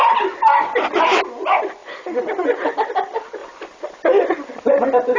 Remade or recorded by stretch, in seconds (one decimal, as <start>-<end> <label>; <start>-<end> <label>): 0.0-1.8 recorded; 1.8-2.7 remade; 2.7-3.4 recorded; 3.4-4.7 remade; 4.7-5.2 recorded